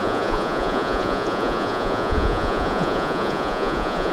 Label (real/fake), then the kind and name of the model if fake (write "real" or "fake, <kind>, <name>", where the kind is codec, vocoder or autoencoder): fake, vocoder, Vocos